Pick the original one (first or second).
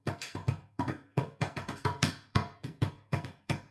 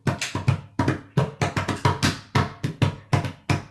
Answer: second